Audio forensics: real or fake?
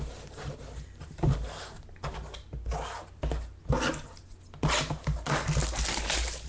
real